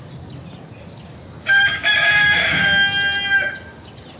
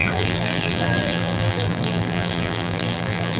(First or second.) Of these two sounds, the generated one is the second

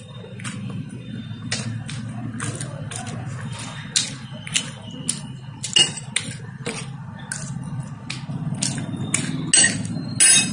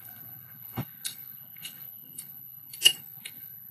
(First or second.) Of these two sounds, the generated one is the second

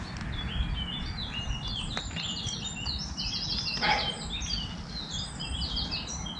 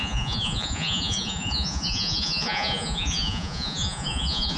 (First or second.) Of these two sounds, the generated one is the second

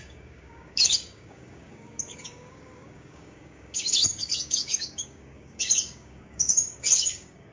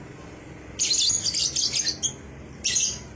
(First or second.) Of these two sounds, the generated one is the first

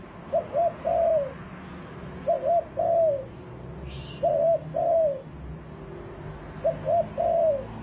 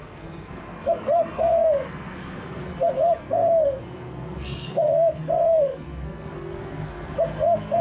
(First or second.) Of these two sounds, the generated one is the second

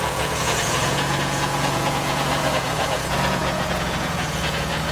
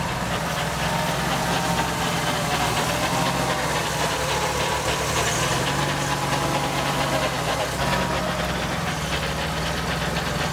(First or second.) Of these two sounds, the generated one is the first